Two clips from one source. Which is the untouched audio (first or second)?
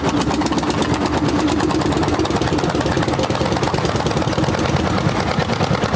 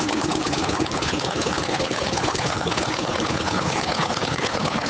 first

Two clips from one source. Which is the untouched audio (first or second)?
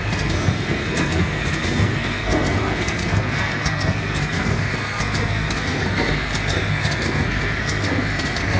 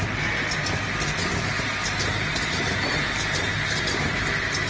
second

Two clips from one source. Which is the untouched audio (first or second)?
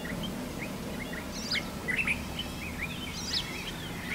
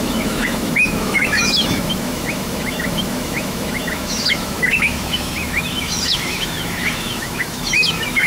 first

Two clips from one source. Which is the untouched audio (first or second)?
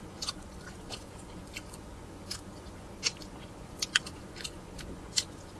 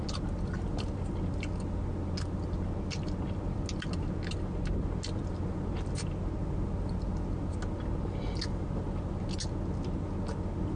second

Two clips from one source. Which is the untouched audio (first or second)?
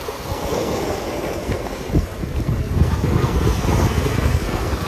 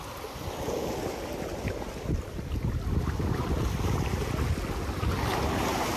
second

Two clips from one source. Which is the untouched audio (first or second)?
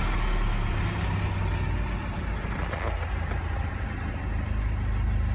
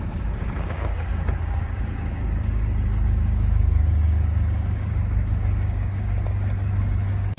first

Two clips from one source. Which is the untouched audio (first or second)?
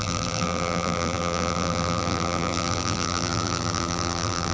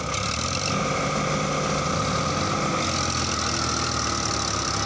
second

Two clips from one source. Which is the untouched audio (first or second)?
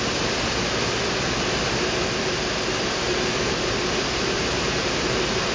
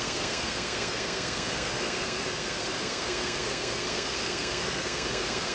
first